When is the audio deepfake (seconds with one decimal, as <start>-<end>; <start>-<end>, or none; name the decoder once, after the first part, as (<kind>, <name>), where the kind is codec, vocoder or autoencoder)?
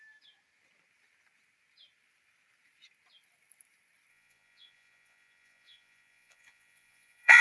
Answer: 4.1-7.4 (vocoder, Vocos)